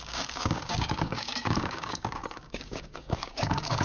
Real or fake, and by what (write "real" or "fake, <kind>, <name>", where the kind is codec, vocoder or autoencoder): fake, codec, DAC